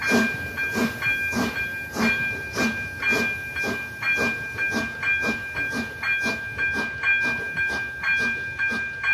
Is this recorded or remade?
recorded